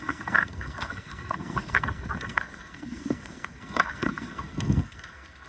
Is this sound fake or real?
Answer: fake